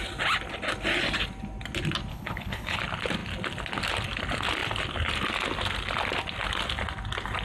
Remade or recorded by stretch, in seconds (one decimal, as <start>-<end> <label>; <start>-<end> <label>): 0.0-2.1 recorded; 2.1-2.8 remade; 2.8-7.4 recorded